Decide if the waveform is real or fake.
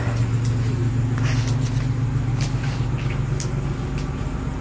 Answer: real